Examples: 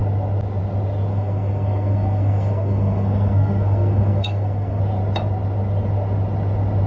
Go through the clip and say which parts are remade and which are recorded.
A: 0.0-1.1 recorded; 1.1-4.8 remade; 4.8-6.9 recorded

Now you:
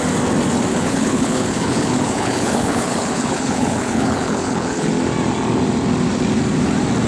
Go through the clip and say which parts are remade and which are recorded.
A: 0.0-0.7 recorded; 0.7-4.9 remade; 4.9-7.1 recorded

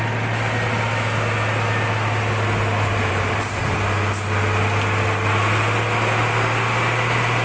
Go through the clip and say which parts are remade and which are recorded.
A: 0.0-2.9 recorded; 2.9-3.7 remade; 3.7-7.4 recorded

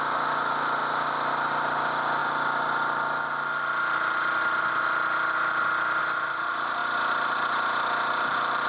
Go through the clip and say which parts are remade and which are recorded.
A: 0.0-8.7 recorded

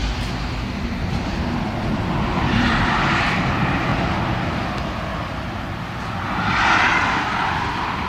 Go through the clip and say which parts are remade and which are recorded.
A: 0.0-0.7 recorded; 0.7-3.9 remade; 3.9-8.1 recorded

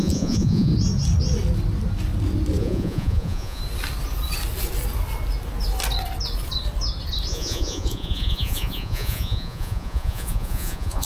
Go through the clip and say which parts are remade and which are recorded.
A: 0.0-0.7 remade; 0.7-2.6 recorded; 2.6-3.6 remade; 3.6-7.3 recorded; 7.3-11.0 remade

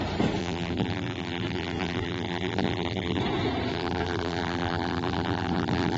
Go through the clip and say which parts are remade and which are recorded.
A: 0.0-0.4 recorded; 0.4-3.2 remade; 3.2-3.7 recorded; 3.7-6.0 remade

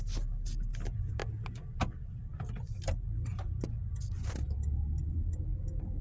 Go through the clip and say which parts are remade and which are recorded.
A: 0.0-6.0 recorded